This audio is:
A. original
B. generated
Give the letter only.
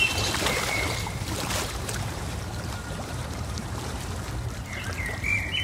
B